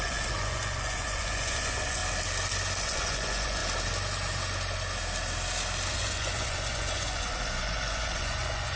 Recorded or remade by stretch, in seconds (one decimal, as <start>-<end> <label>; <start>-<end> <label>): 0.0-2.0 remade; 2.0-2.8 recorded; 2.8-3.6 remade; 3.6-5.9 recorded; 5.9-8.8 remade